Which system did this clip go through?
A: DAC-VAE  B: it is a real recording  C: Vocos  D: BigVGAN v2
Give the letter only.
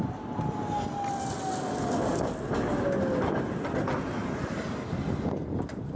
B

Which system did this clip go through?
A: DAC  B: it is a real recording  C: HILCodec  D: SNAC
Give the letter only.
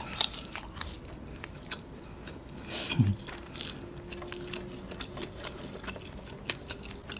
B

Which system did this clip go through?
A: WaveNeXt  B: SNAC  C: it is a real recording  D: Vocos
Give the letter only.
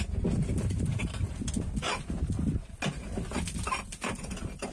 C